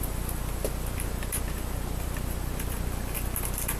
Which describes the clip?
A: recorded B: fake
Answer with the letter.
A